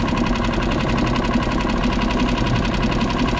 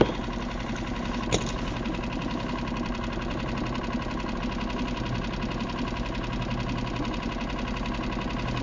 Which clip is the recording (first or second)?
second